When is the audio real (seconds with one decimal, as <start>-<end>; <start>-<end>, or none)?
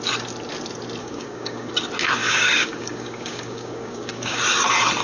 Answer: 0.0-1.0; 1.7-2.2; 4.4-5.0